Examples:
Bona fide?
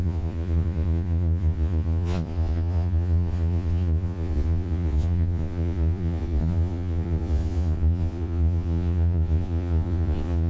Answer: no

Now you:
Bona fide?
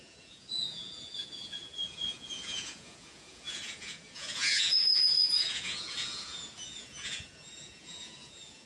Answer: no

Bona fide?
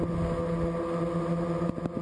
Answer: yes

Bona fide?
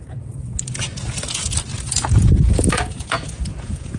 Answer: no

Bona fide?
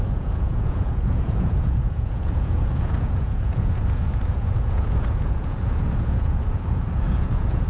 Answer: no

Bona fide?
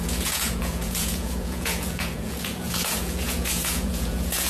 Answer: no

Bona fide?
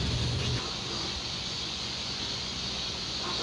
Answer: no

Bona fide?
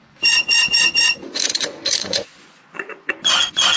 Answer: no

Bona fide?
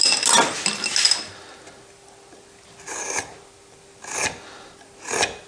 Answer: yes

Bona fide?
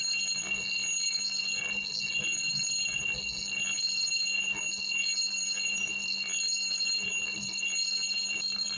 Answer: yes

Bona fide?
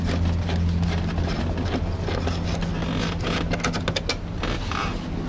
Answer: yes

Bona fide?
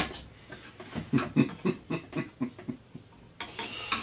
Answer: yes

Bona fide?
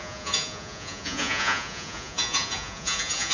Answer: no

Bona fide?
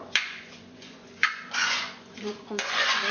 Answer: no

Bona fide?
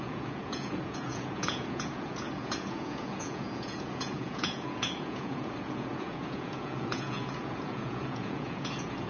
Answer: no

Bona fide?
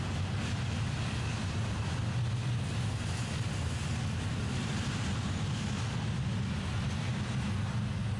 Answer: yes